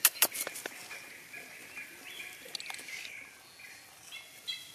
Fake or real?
real